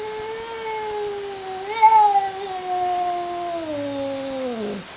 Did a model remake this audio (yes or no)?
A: no